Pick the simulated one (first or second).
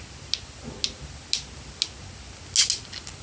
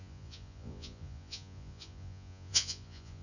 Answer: second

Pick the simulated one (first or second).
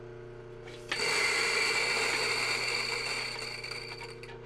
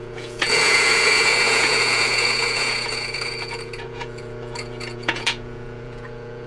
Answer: second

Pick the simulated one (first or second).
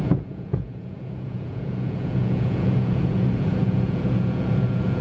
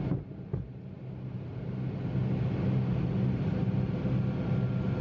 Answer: first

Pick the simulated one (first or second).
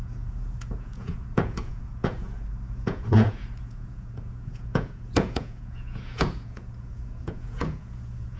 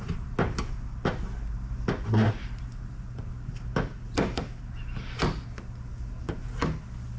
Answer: first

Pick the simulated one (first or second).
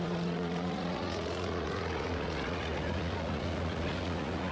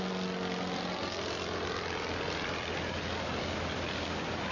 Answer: first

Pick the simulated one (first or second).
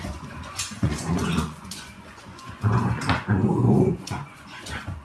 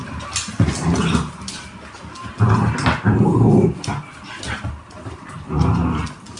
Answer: first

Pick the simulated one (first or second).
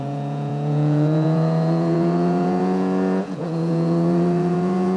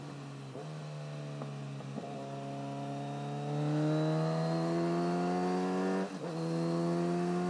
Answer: first